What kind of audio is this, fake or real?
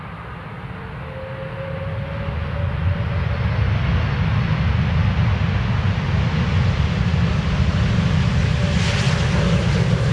real